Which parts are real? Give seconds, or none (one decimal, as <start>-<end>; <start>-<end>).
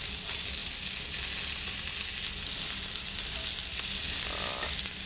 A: 0.0-5.1